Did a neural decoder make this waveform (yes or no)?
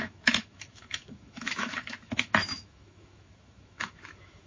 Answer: yes